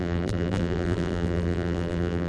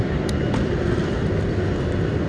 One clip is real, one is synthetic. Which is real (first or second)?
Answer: second